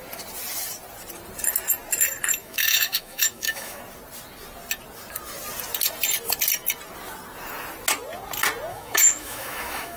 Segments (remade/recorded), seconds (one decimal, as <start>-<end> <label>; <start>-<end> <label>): 0.0-2.4 recorded; 2.4-3.8 remade; 3.8-8.7 recorded; 8.7-10.0 remade